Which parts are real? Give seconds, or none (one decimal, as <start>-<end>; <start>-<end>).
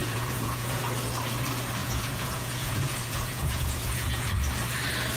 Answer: 0.8-1.8; 4.3-5.2